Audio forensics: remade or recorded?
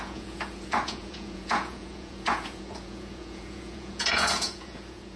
remade